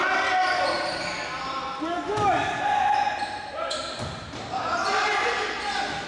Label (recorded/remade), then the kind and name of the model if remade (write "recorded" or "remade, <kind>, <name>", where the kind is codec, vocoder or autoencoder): recorded